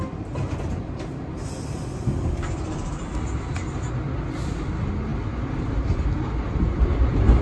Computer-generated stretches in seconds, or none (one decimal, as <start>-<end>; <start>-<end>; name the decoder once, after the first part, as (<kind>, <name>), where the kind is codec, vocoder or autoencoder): none